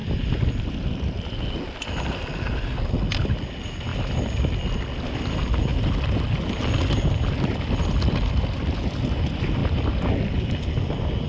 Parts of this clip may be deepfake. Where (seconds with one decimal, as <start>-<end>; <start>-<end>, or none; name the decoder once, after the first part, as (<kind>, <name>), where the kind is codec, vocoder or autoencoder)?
none